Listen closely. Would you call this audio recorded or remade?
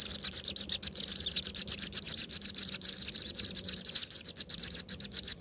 recorded